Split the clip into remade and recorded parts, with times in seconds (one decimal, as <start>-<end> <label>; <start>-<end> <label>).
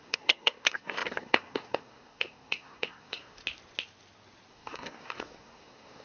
0.0-3.4 remade; 3.4-4.5 recorded; 4.5-6.0 remade